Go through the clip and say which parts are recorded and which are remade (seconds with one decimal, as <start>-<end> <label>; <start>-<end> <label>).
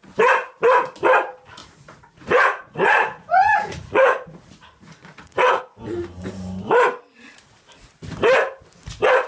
0.0-1.6 recorded; 1.6-5.6 remade; 5.6-9.3 recorded